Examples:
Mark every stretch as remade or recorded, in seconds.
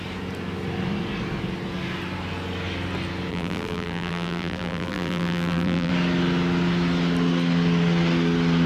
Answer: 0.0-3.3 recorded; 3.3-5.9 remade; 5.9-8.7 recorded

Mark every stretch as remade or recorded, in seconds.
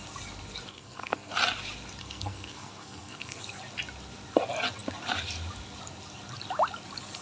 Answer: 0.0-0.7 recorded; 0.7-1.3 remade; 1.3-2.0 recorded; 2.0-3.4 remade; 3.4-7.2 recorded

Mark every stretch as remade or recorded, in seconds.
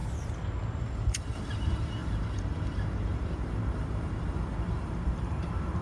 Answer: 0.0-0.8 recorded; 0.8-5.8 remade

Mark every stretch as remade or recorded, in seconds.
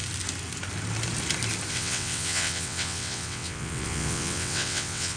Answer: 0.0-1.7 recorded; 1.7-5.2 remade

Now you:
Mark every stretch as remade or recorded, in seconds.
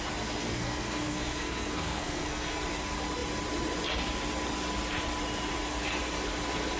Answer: 0.0-0.4 recorded; 0.4-2.6 remade; 2.6-6.8 recorded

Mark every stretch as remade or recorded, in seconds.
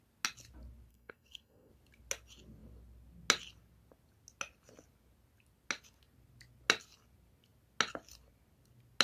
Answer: 0.0-0.9 recorded; 0.9-1.7 remade; 1.7-9.0 recorded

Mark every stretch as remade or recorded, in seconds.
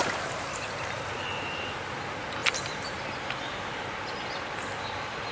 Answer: 0.0-2.4 recorded; 2.4-3.8 remade; 3.8-5.3 recorded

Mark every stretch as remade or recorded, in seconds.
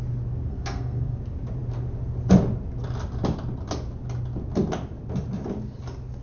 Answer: 0.0-0.5 recorded; 0.5-1.2 remade; 1.2-6.2 recorded